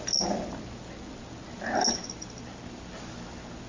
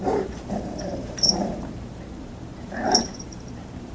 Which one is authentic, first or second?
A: first